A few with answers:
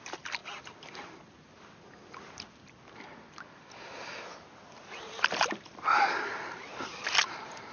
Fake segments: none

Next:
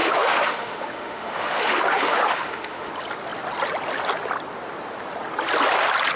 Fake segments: 0.0-2.9 (autoencoder, DAC-VAE)

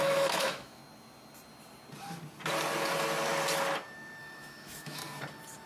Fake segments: 0.0-0.8 (autoencoder, DAC-VAE); 4.2-5.0